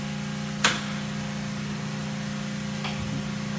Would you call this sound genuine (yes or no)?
yes